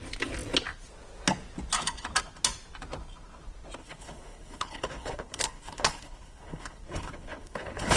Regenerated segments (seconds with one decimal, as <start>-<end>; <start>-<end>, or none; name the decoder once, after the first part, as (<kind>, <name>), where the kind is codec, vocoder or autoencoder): 3.8-8.0 (codec, HILCodec)